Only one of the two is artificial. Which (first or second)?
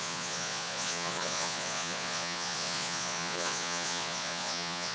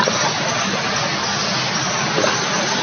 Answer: first